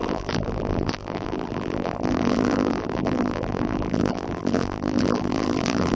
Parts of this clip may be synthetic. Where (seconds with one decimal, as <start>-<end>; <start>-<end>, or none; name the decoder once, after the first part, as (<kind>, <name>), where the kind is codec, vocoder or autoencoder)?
0.0-5.9 (vocoder, BigVGAN v2)